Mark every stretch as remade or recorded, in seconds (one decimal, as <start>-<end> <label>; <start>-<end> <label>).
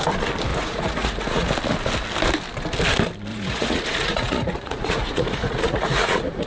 0.0-0.5 recorded; 0.5-1.5 remade; 1.5-3.3 recorded; 3.3-6.5 remade